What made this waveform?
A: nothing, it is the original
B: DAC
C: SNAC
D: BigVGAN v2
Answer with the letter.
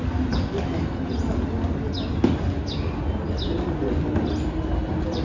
A